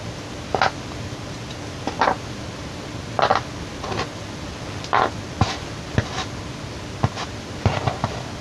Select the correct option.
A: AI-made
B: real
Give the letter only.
B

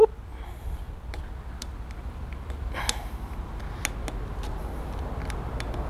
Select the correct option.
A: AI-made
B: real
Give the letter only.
B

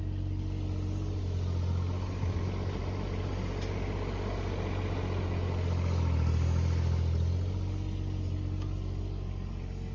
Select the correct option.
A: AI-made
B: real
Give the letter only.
B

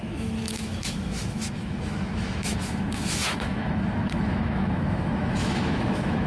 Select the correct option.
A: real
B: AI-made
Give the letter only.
B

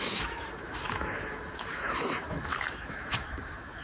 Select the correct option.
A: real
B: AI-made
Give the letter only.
B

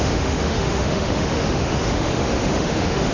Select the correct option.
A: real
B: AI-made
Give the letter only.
B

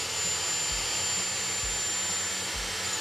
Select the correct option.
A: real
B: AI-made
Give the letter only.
A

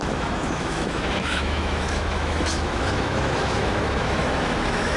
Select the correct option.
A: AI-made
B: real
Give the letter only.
A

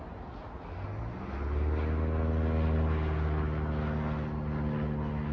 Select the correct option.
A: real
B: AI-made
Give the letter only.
A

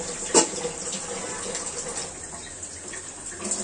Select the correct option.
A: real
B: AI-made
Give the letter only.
A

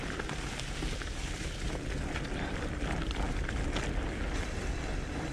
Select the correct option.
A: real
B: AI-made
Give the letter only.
A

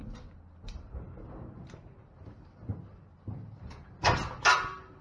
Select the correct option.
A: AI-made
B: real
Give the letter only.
B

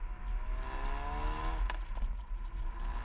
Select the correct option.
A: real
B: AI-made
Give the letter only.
A